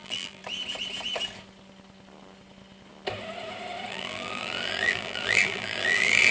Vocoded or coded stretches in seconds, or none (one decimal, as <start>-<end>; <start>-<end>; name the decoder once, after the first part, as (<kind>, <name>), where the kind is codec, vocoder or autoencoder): 0.0-0.4 (vocoder, BigVGAN v2); 3.9-6.3